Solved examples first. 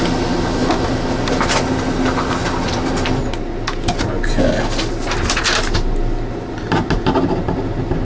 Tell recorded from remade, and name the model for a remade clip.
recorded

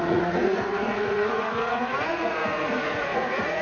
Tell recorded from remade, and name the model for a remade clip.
remade, vocoder, Vocos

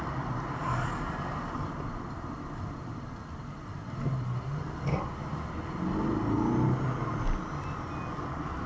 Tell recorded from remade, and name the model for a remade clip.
recorded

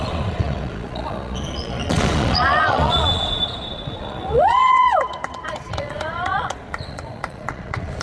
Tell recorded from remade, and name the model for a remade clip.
remade, vocoder, Vocos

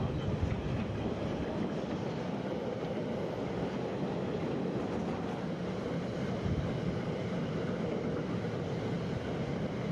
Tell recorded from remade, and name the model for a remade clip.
recorded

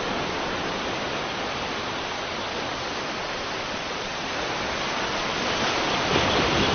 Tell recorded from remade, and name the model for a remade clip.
recorded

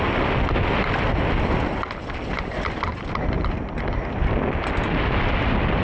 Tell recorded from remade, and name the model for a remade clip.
recorded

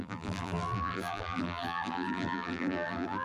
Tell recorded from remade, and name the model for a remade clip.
remade, vocoder, BigVGAN v2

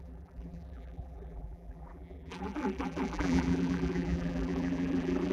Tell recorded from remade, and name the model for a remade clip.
remade, vocoder, BigVGAN v2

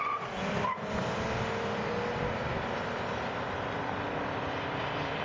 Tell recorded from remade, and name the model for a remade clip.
recorded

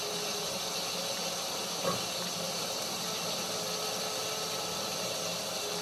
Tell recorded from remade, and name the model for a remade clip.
remade, vocoder, BigVGAN v2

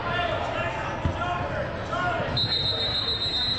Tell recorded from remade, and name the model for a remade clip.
recorded